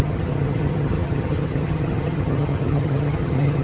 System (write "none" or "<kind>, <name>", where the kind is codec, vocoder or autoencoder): vocoder, HiFi-GAN